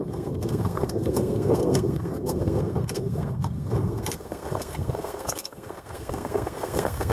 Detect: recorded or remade remade